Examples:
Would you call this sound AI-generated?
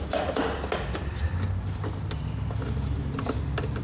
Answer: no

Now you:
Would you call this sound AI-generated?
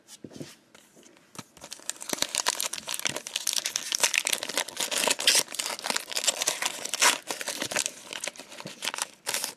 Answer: no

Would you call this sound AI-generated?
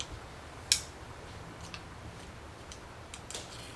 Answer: no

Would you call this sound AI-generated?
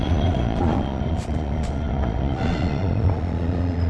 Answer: yes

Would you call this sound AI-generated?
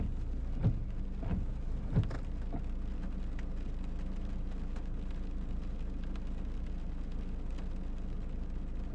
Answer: no